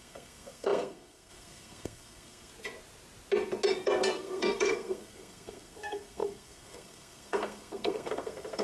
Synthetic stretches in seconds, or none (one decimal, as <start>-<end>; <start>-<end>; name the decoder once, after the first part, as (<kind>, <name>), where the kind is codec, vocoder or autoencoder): 0.0-2.5 (codec, SNAC); 3.7-8.6

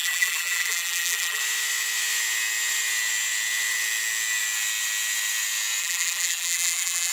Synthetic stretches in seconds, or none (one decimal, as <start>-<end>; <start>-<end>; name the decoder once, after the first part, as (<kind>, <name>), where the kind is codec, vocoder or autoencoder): 0.0-1.4 (vocoder, BigVGAN v2); 5.8-7.1

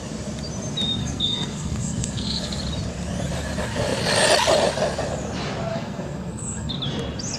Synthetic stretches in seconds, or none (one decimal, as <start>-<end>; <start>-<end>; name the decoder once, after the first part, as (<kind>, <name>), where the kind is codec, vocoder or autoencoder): 1.0-2.6 (codec, SNAC); 5.7-6.7

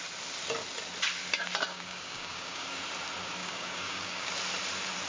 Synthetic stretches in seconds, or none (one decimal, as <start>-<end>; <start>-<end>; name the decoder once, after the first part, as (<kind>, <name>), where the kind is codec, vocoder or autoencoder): 1.7-2.8 (codec, DAC); 3.4-4.3

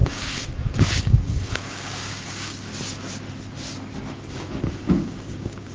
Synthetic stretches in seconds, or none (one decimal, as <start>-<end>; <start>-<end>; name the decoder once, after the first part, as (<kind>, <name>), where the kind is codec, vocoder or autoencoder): 0.0-2.7 (codec, DAC); 4.1-5.7

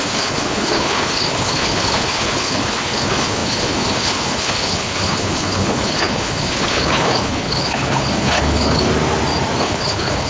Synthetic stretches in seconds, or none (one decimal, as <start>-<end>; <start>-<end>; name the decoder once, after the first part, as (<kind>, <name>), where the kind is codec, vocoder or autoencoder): 0.0-8.9 (codec, HILCodec); 9.6-10.3

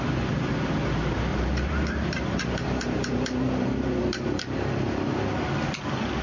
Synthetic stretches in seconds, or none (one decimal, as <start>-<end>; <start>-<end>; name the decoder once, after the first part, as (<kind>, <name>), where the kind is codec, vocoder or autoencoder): 1.3-5.0 (vocoder, BigVGAN v2)

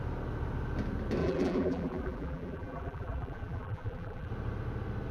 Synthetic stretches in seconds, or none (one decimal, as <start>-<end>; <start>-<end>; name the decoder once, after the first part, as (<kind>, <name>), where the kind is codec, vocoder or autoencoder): 1.2-4.3 (vocoder, BigVGAN v2)